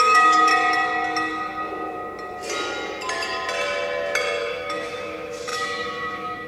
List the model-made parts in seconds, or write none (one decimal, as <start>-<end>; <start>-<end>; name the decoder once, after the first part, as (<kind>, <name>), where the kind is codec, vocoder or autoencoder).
0.0-0.5 (autoencoder, DAC-VAE); 4.4-6.5